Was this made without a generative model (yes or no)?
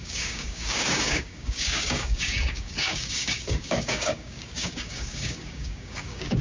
no